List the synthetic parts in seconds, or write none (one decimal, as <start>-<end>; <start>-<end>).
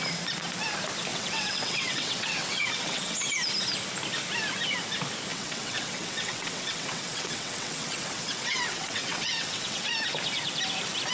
1.1-3.3; 5.3-9.9